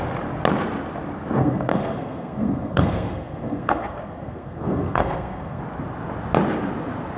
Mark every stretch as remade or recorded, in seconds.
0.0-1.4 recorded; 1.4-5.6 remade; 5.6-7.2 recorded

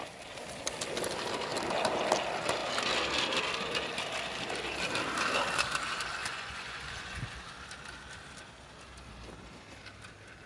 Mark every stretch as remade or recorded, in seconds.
0.0-6.2 recorded; 6.2-7.2 remade; 7.2-10.5 recorded

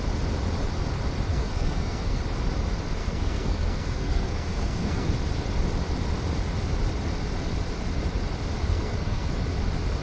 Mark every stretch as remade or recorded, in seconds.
0.0-1.3 recorded; 1.3-2.2 remade; 2.2-3.0 recorded; 3.0-5.1 remade; 5.1-8.7 recorded; 8.7-9.3 remade; 9.3-10.0 recorded

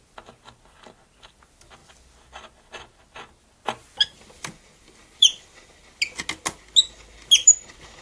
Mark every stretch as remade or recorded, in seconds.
0.0-8.0 recorded

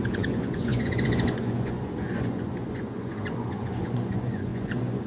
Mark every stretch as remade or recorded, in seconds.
0.0-5.1 remade

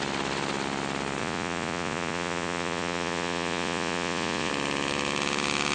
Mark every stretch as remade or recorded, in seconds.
0.0-1.2 recorded; 1.2-4.5 remade; 4.5-5.7 recorded

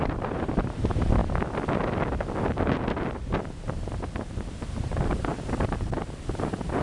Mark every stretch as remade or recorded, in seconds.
0.0-1.2 remade; 1.2-4.8 recorded; 4.8-6.8 remade